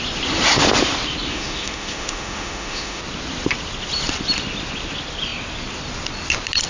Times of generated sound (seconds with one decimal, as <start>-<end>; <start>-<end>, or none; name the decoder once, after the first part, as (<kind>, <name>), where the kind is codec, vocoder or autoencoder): 1.3-3.0 (autoencoder, DAC-VAE)

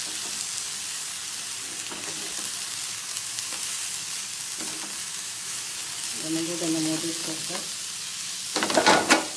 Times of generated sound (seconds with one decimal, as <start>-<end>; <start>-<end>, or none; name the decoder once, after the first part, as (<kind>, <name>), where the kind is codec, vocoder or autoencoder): 3.0-3.5 (autoencoder, DAC-VAE); 5.0-5.8